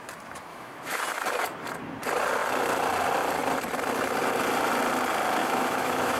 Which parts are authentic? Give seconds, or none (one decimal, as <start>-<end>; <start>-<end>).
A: 0.0-0.5; 1.0-5.4